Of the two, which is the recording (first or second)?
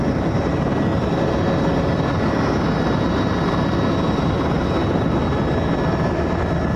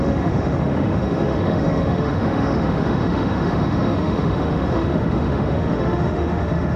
first